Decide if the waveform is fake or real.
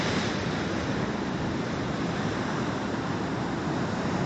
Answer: real